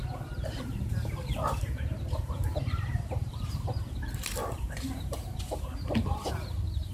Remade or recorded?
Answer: remade